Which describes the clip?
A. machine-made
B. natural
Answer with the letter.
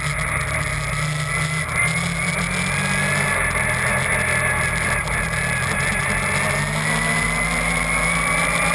B